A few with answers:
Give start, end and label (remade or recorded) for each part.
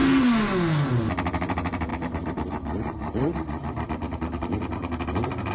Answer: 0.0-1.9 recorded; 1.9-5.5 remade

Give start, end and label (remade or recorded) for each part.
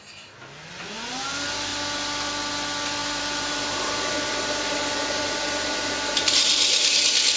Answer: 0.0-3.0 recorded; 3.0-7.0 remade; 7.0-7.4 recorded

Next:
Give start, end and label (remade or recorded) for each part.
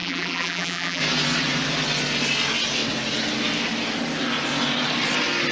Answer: 0.0-1.0 remade; 1.0-5.5 recorded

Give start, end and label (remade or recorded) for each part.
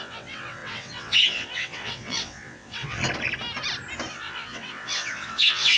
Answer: 0.0-3.0 remade; 3.0-4.1 recorded; 4.1-5.8 remade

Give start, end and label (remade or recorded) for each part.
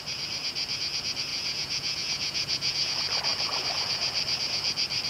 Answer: 0.0-1.3 recorded; 1.3-2.9 remade; 2.9-5.1 recorded